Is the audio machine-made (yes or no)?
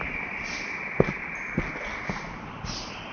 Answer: no